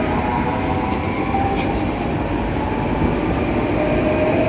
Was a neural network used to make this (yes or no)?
no